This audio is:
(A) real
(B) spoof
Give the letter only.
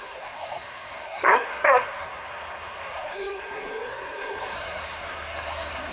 B